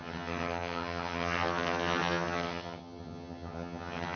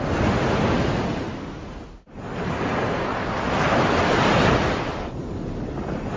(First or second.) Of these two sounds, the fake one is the first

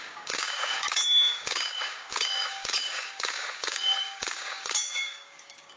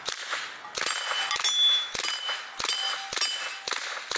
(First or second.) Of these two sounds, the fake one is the first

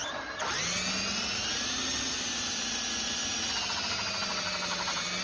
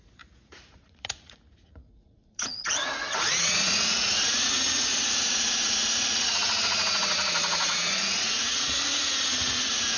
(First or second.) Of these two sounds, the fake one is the second